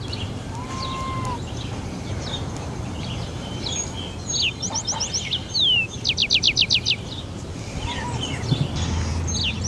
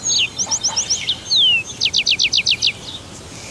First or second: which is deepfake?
first